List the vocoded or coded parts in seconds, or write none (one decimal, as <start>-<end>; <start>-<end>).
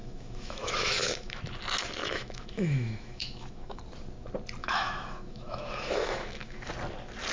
0.0-1.4; 2.0-3.8; 4.6-6.7